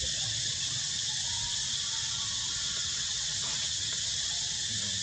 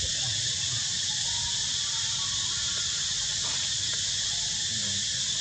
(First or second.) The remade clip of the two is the first